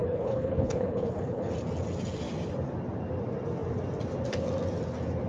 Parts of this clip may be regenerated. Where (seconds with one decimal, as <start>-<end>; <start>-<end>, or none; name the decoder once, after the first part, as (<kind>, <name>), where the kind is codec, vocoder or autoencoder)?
0.0-1.5 (codec, HILCodec)